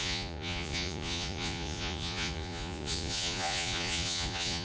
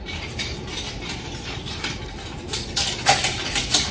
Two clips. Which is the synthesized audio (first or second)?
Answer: first